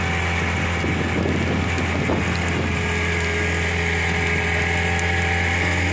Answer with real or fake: real